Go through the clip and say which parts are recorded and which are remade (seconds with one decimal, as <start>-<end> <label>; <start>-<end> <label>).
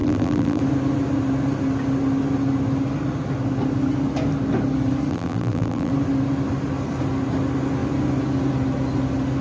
0.0-0.6 remade; 0.6-5.1 recorded; 5.1-5.9 remade; 5.9-9.4 recorded